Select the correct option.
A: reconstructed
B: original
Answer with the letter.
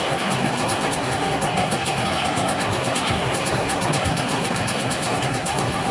A